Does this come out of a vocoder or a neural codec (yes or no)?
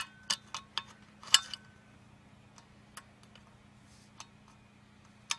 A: no